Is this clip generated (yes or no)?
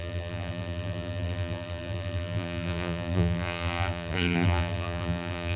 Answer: yes